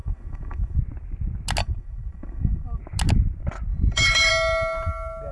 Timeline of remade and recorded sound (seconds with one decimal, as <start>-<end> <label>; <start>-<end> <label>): 0.0-0.8 remade; 0.8-1.6 recorded; 1.6-2.8 remade; 2.8-3.7 recorded; 3.7-4.3 remade; 4.3-5.3 recorded